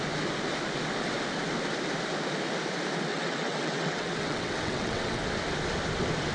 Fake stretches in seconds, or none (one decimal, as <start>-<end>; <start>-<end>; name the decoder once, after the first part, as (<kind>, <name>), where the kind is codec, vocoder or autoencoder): 3.1-5.2 (vocoder, WaveNeXt)